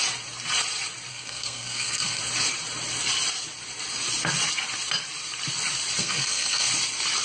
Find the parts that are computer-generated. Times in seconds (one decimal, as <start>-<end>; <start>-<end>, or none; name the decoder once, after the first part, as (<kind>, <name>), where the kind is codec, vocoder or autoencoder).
1.1-2.2 (codec, SNAC); 6.0-6.7